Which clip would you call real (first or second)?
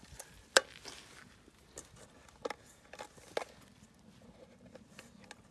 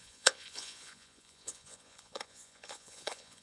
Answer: first